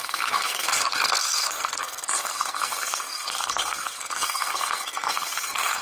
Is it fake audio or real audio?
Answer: fake